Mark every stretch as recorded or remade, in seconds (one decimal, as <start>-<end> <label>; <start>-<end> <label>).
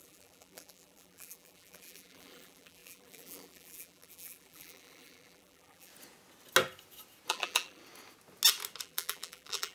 0.0-5.9 remade; 5.9-7.3 recorded; 7.3-7.8 remade; 7.8-8.8 recorded; 8.8-9.7 remade